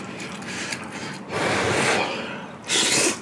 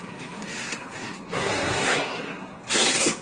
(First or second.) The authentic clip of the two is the first